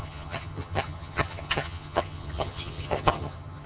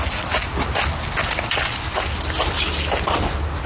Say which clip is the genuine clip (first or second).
second